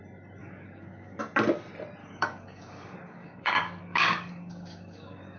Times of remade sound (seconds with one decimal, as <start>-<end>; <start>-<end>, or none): 0.4-1.2; 2.0-5.4